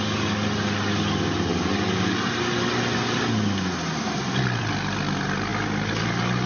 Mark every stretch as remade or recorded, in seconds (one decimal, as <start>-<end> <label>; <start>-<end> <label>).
0.0-6.5 recorded